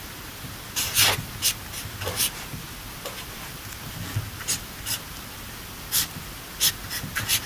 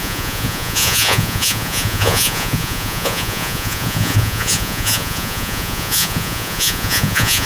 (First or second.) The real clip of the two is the first